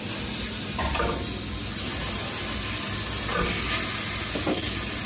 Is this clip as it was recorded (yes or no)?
yes